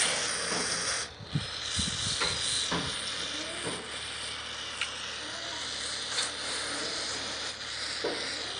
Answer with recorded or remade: recorded